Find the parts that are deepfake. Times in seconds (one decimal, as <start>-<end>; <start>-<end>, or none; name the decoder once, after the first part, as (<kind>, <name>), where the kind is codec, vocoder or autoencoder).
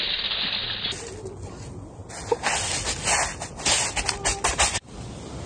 none